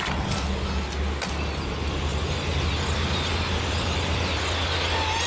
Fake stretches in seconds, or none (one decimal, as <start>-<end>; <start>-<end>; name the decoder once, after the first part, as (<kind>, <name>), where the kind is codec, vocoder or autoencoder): none